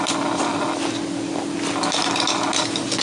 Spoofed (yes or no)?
no